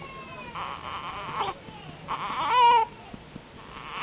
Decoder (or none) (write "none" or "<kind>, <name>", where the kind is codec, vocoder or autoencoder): none